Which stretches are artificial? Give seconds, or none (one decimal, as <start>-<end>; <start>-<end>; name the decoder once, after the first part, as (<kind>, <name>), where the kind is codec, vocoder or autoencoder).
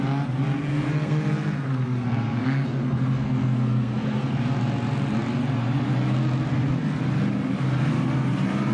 0.7-4.3 (codec, SNAC)